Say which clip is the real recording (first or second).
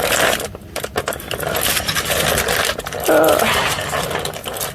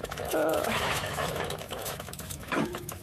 first